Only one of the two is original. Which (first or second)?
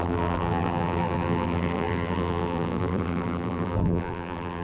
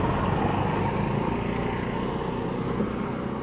second